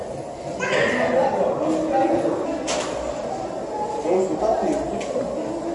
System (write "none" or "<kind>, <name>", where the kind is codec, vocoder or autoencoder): none